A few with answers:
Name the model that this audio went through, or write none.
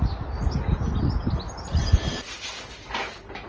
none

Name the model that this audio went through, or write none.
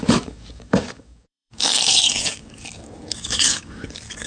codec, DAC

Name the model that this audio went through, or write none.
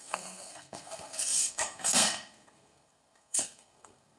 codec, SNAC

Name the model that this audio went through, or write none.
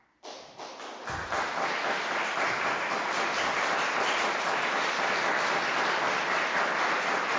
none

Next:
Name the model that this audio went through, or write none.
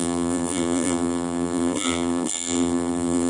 vocoder, BigVGAN v2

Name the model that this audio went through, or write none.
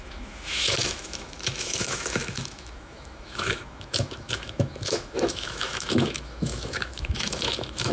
autoencoder, DAC-VAE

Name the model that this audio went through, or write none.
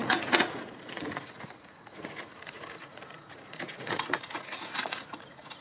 vocoder, Vocos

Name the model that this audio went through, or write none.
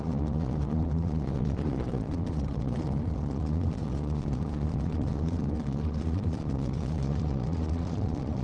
vocoder, Vocos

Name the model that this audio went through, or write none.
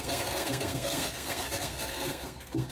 codec, SNAC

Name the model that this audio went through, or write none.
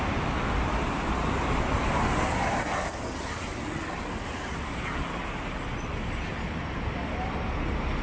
none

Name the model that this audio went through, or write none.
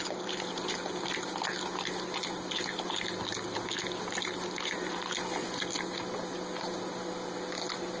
none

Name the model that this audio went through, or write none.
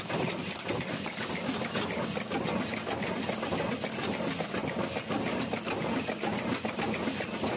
none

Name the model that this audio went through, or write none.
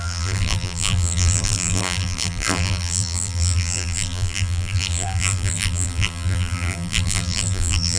vocoder, BigVGAN v2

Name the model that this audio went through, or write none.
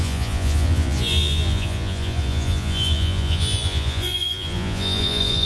vocoder, Vocos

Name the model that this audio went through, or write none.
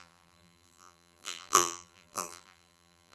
vocoder, BigVGAN v2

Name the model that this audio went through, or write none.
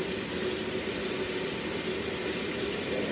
none